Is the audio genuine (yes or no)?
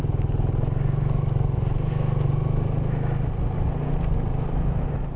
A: yes